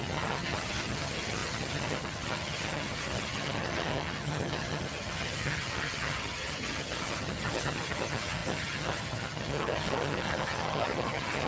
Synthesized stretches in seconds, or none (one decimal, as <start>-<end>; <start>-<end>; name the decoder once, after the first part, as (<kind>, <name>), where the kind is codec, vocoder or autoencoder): 0.0-11.5 (vocoder, HiFi-GAN)